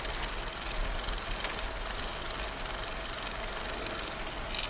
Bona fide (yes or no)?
yes